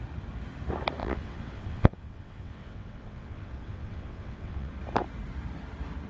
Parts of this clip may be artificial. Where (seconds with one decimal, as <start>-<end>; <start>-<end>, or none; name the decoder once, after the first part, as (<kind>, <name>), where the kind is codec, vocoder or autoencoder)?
1.0-4.7 (vocoder, WaveNeXt)